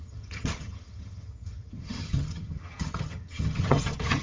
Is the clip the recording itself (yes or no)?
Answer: no